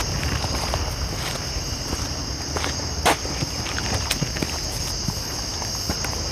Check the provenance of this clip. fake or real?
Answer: real